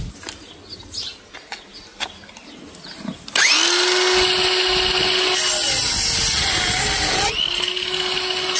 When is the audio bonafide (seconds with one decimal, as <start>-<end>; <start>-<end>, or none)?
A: 0.0-8.6